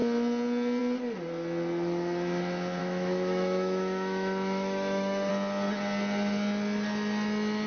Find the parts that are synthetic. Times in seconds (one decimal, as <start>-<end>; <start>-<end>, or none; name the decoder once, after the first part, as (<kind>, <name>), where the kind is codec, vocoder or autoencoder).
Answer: 2.8-5.3 (autoencoder, DAC-VAE)